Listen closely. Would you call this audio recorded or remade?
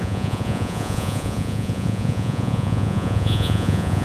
remade